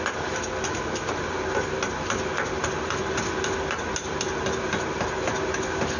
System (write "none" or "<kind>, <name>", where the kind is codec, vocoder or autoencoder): none